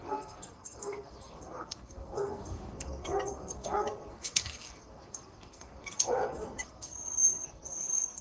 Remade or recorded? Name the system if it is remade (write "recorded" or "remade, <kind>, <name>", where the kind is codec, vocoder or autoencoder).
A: remade, codec, SNAC